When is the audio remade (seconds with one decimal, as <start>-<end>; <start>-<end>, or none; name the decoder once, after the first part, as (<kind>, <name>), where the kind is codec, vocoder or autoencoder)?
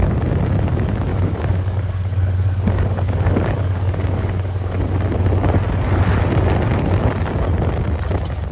1.1-4.8 (codec, DAC)